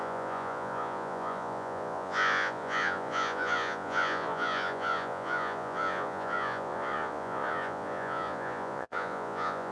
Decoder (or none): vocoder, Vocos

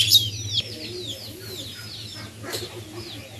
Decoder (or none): none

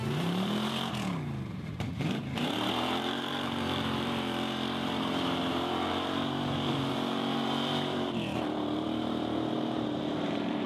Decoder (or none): vocoder, BigVGAN v2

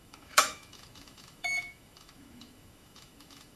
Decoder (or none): autoencoder, DAC-VAE